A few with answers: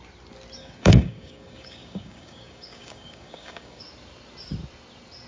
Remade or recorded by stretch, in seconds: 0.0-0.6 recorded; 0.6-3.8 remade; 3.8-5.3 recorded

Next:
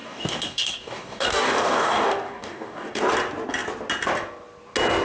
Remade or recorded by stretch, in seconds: 0.0-3.0 remade; 3.0-5.0 recorded